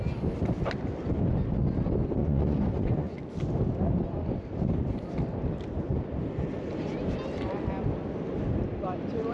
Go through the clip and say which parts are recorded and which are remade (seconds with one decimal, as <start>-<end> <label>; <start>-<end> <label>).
0.0-2.2 recorded; 2.2-3.2 remade; 3.2-9.3 recorded